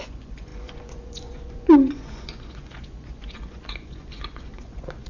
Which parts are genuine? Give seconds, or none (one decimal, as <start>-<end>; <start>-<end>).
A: none